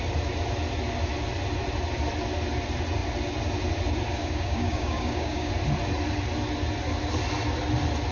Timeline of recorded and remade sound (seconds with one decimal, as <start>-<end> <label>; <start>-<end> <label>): 0.0-4.2 recorded; 4.2-5.5 remade; 5.5-8.1 recorded